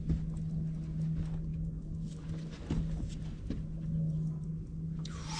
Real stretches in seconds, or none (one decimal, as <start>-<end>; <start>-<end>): 0.0-5.4